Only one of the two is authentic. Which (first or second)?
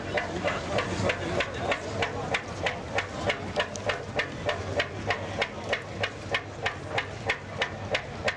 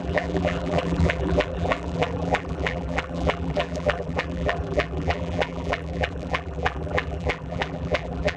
first